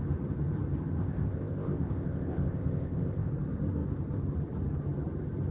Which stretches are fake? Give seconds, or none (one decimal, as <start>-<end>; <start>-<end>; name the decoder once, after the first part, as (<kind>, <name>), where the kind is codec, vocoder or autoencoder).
1.0-3.3 (codec, ZipCodec)